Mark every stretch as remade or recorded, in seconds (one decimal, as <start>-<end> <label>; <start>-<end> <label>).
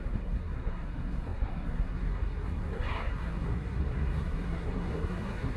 0.0-5.6 remade